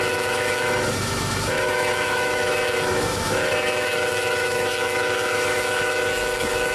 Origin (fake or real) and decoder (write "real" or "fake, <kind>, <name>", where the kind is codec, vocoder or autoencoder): fake, autoencoder, DAC-VAE